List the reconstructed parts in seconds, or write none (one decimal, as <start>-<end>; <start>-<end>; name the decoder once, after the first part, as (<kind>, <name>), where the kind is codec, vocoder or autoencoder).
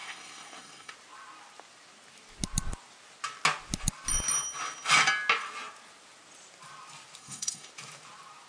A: 0.0-0.9 (codec, SNAC); 7.2-7.7